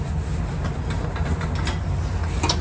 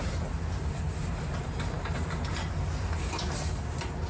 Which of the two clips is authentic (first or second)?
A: first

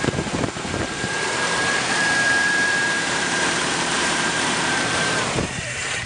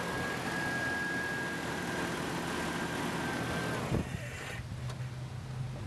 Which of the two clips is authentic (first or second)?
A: second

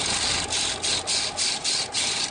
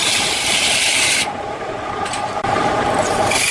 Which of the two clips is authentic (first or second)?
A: first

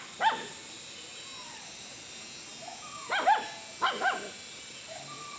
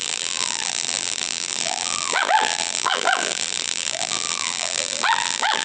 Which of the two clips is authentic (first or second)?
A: first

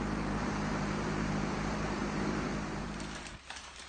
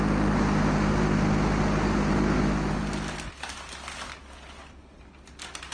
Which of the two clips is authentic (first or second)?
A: second